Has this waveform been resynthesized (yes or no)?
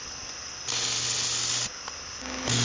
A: no